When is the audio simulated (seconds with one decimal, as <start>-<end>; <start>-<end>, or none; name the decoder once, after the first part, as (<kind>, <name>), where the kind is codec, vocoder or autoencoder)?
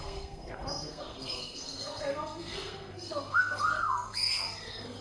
0.0-5.0 (codec, SNAC)